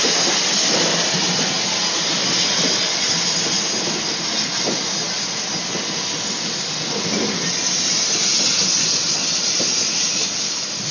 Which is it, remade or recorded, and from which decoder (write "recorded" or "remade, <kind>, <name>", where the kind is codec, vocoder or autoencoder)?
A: recorded